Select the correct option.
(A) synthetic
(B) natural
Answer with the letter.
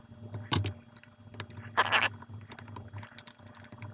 B